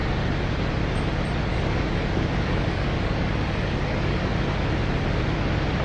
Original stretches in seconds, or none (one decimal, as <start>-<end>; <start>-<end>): 0.0-1.5; 4.2-5.8

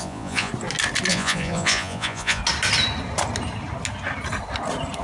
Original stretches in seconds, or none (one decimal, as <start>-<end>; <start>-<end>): 0.5-1.1; 2.4-5.0

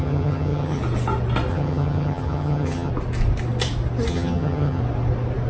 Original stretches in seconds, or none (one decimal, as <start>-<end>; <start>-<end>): 0.8-1.5; 2.9-4.1; 4.8-5.5

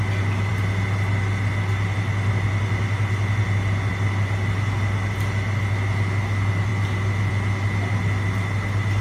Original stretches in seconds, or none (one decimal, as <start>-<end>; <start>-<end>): 0.0-9.0

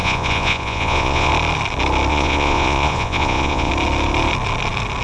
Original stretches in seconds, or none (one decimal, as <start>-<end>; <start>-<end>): 1.3-2.1; 3.7-5.0

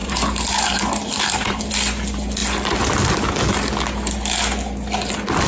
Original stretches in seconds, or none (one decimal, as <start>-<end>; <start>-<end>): 1.7-5.5